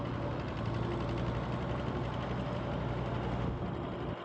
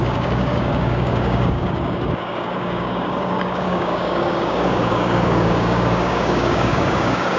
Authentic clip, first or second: first